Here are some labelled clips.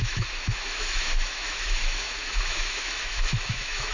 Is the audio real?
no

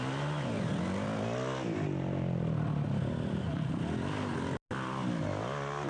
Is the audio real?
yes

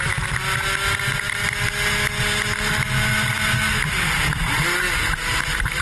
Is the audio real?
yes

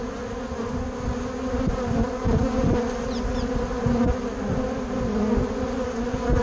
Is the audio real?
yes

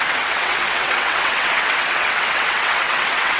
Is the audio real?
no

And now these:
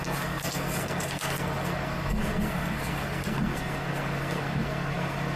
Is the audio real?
no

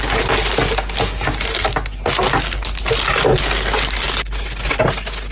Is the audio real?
yes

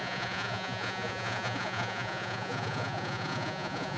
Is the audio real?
no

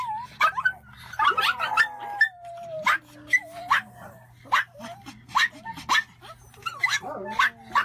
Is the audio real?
yes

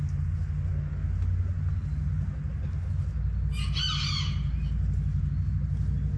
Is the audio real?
yes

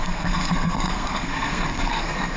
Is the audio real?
no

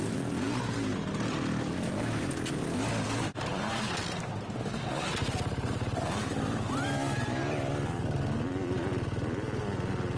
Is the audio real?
yes